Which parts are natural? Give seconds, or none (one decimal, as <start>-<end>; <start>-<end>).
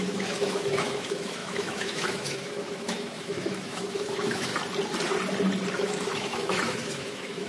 4.5-5.7